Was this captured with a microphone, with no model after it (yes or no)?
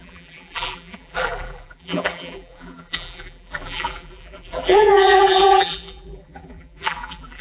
no